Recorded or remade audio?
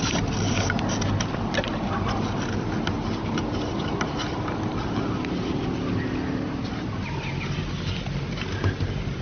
recorded